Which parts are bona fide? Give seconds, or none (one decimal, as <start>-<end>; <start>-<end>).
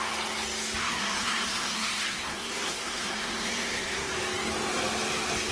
0.0-0.8; 4.1-5.5